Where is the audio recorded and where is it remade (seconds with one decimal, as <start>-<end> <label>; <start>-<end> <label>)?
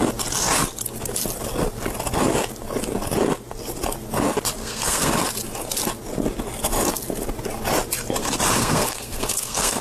0.0-4.6 recorded; 4.6-5.1 remade; 5.1-8.6 recorded; 8.6-9.8 remade